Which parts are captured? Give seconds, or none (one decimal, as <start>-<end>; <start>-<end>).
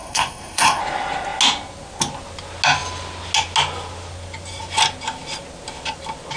0.8-6.4